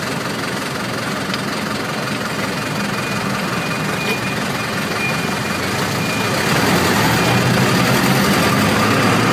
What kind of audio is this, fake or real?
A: real